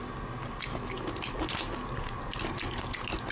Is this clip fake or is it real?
real